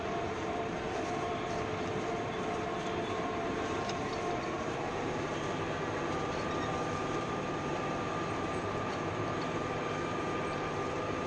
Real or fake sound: fake